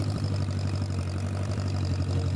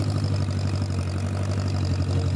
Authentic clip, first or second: second